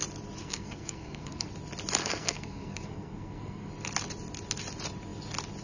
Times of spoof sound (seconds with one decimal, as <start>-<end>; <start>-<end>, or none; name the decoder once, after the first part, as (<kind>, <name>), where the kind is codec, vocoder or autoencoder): 0.4-1.5 (codec, SNAC); 2.0-3.7